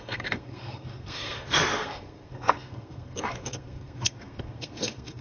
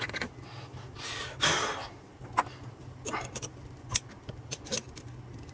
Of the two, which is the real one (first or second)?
second